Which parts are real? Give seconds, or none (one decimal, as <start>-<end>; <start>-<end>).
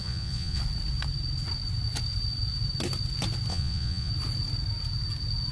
0.6-3.5; 4.1-5.5